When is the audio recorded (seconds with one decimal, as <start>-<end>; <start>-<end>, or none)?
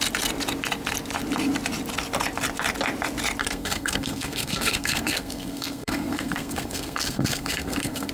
0.0-3.4